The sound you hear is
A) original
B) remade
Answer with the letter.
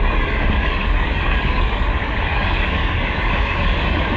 B